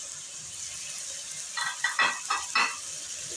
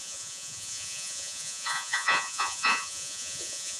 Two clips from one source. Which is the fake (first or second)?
second